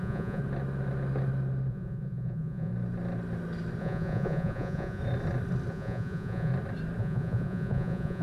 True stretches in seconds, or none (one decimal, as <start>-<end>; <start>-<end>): 0.4-1.7; 2.7-3.8; 5.0-5.7; 6.5-7.0